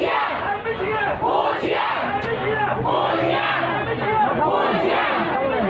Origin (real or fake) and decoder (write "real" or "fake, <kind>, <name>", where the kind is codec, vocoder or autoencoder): real